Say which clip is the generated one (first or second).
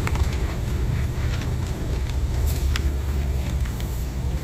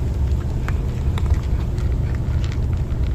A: first